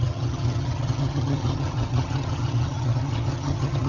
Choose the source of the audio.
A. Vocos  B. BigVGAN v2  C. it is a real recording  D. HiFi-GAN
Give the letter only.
D